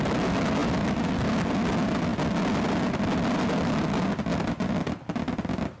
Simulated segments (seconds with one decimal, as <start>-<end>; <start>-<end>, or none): none